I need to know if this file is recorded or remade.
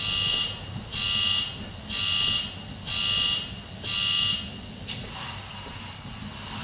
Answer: recorded